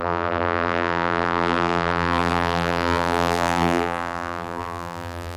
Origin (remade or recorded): remade